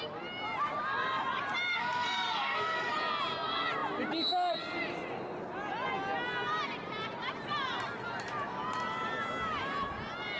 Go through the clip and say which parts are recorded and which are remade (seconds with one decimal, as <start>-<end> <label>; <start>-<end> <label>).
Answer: 0.0-1.7 recorded; 1.7-2.9 remade; 2.9-10.4 recorded